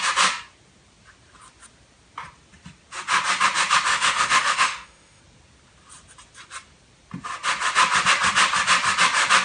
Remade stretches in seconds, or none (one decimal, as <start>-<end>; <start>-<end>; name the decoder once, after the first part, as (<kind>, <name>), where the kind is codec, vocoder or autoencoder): 3.9-5.2 (autoencoder, DAC-VAE)